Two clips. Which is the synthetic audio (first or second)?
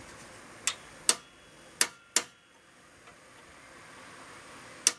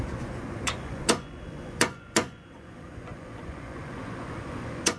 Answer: second